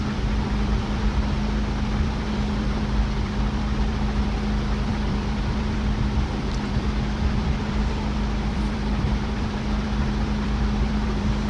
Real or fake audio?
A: fake